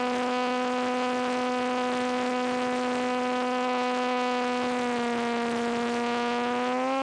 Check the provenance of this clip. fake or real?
real